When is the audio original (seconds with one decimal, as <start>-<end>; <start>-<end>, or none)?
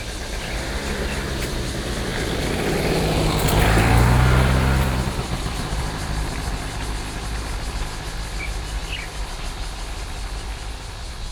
0.0-0.8; 1.7-2.1; 6.5-8.8; 9.4-11.3